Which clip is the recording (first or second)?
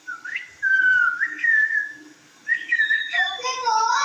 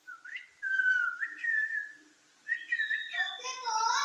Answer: second